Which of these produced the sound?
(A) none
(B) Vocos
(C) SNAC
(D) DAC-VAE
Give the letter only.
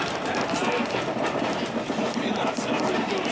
A